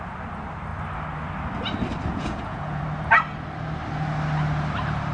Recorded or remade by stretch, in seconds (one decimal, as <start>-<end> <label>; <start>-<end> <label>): 0.0-2.1 recorded; 2.1-2.8 remade; 2.8-5.1 recorded